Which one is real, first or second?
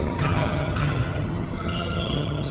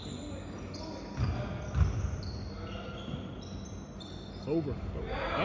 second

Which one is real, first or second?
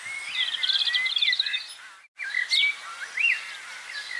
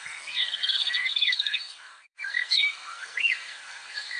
first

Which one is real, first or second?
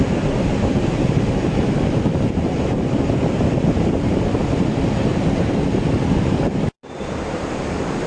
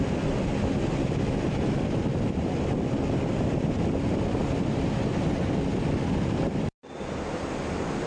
second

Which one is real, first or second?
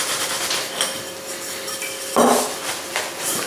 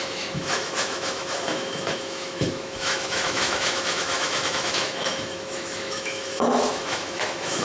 first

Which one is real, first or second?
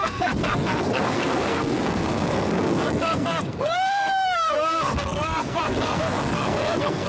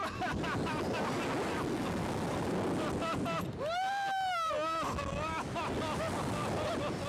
second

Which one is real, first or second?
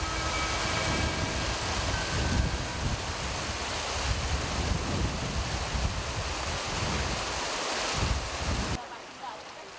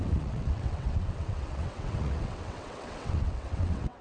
first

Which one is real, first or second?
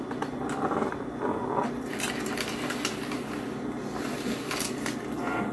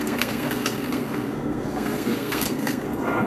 first